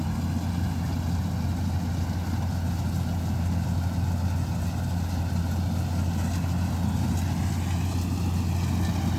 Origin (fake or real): real